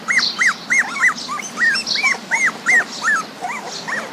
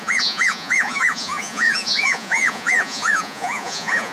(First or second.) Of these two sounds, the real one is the first